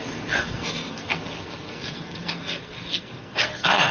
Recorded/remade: remade